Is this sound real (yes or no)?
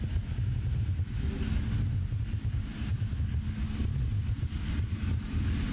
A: yes